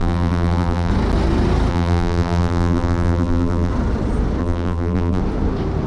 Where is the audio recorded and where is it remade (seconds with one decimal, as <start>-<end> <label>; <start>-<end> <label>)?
0.0-0.9 remade; 0.9-1.7 recorded; 1.7-3.7 remade; 3.7-4.4 recorded; 4.4-5.2 remade; 5.2-5.9 recorded